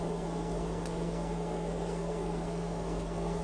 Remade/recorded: remade